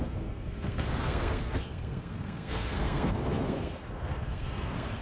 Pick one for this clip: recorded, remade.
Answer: remade